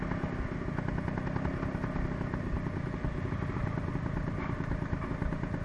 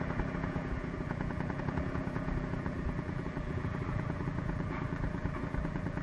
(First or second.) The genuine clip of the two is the first